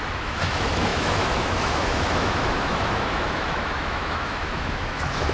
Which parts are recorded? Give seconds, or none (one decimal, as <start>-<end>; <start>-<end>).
none